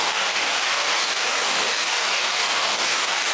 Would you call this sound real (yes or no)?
no